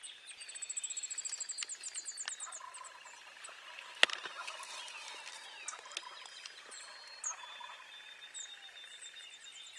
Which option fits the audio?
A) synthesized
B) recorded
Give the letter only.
B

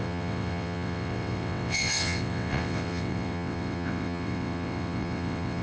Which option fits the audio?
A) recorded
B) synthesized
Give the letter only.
B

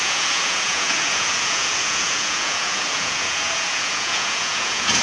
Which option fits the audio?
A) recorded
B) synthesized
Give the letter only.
B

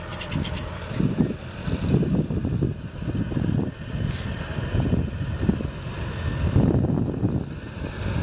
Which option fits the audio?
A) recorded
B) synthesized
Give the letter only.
A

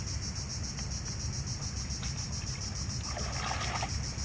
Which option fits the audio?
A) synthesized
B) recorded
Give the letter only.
B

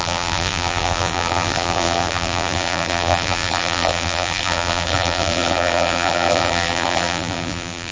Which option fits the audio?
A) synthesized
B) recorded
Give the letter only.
A